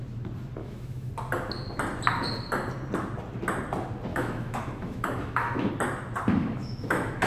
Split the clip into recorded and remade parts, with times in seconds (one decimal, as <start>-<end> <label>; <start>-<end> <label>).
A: 0.0-0.6 recorded; 0.6-1.1 remade; 1.1-4.1 recorded; 4.1-5.7 remade; 5.7-6.4 recorded; 6.4-7.3 remade

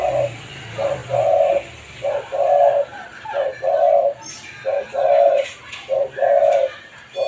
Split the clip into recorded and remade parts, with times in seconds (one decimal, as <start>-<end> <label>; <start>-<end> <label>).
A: 0.0-7.3 recorded

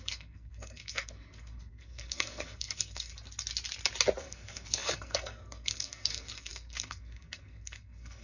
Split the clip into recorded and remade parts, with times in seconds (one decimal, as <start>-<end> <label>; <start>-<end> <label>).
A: 0.0-3.1 remade; 3.1-4.2 recorded; 4.2-8.2 remade

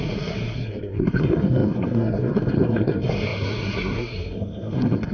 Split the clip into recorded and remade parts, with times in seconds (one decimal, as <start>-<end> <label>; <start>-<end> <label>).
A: 0.0-5.1 remade

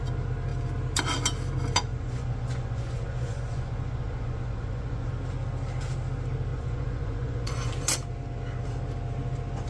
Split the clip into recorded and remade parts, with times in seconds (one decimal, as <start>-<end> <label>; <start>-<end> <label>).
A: 0.0-1.9 recorded; 1.9-5.1 remade; 5.1-6.5 recorded; 6.5-7.7 remade; 7.7-9.7 recorded